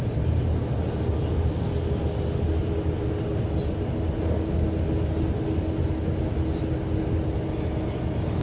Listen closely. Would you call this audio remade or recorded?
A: recorded